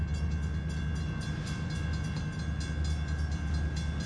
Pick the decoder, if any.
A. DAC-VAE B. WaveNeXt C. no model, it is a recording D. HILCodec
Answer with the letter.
C